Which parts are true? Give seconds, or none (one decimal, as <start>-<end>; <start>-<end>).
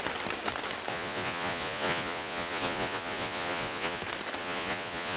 0.0-0.9; 4.0-4.4